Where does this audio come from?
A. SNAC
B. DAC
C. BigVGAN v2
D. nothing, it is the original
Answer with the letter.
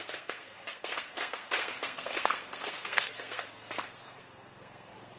A